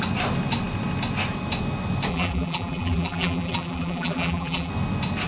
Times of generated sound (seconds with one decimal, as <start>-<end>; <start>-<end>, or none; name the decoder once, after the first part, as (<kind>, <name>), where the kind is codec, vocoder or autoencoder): 2.1-4.7 (vocoder, BigVGAN v2)